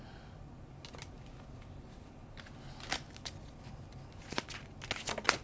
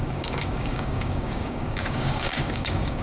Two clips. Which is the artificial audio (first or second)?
second